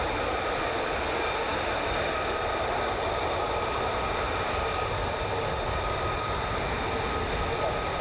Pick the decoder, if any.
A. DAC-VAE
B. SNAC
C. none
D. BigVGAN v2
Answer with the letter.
C